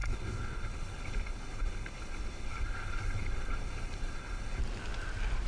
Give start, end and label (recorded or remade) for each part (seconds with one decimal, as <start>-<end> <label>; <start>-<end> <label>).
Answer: 0.0-4.6 remade; 4.6-5.5 recorded